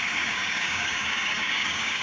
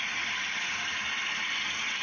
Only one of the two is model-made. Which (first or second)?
first